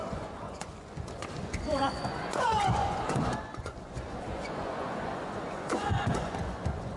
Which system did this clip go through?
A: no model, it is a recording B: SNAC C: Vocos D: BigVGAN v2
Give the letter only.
C